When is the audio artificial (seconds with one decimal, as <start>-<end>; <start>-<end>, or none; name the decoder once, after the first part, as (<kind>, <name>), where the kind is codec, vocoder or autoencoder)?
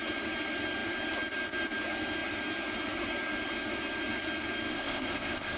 4.7-5.6 (codec, ZipCodec)